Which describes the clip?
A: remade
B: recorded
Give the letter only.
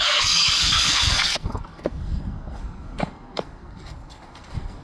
A